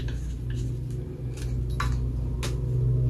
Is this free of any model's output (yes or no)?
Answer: yes